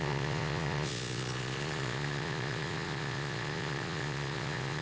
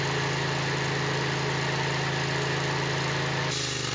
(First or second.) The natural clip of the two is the second